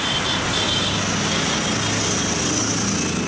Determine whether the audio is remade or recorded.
recorded